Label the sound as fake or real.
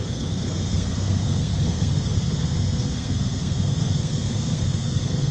fake